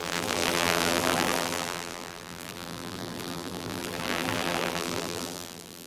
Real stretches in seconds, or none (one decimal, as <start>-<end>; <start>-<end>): none